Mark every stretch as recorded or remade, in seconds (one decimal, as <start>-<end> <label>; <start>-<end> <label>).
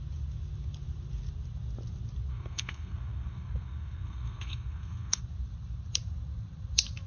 0.0-2.3 recorded; 2.3-5.2 remade; 5.2-7.1 recorded